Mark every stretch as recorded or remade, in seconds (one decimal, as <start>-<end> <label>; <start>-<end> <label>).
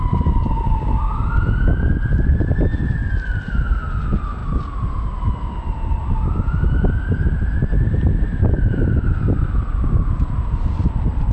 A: 0.0-11.3 recorded